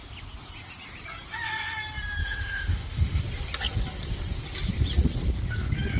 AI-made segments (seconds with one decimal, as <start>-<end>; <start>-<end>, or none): 2.2-3.2